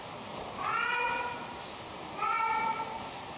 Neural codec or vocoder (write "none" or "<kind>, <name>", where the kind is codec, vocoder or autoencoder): none